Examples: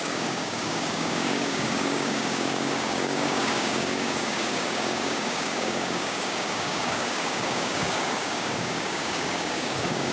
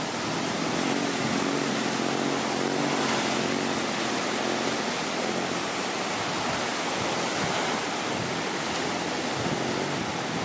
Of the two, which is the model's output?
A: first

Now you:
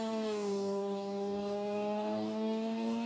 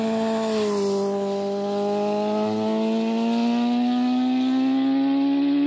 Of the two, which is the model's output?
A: first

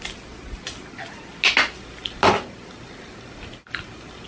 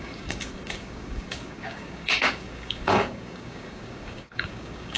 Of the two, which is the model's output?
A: second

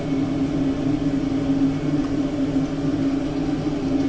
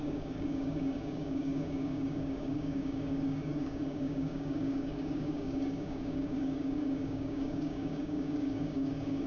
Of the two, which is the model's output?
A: second